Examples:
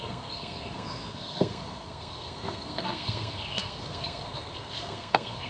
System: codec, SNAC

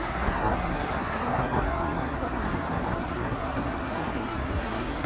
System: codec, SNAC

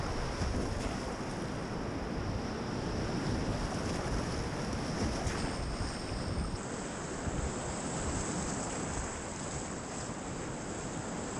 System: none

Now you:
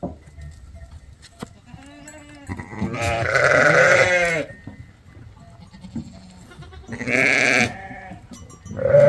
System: none